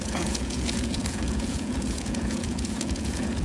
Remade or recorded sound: remade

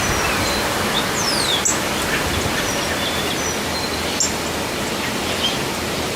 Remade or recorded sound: recorded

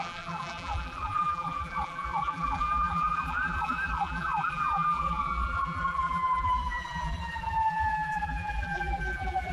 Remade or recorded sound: remade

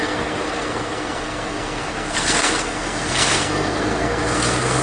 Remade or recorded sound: remade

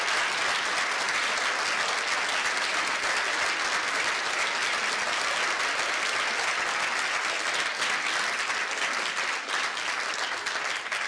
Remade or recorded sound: recorded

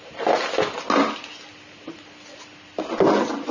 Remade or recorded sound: recorded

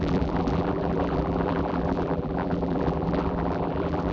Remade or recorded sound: remade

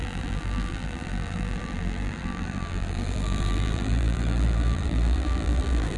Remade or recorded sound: remade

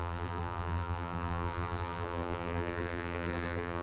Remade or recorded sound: remade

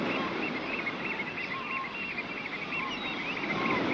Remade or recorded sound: recorded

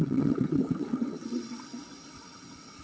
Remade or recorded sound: remade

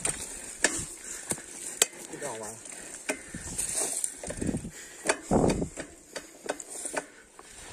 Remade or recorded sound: recorded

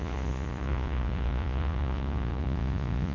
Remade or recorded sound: remade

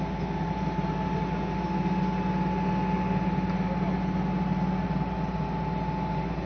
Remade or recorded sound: recorded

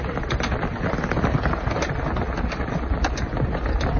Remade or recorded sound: recorded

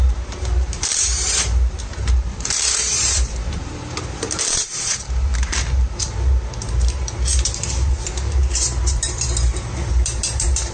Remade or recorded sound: remade